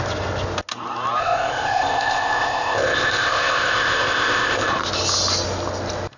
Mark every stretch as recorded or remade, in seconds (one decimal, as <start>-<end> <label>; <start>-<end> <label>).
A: 0.0-1.2 recorded; 1.2-4.7 remade; 4.7-6.2 recorded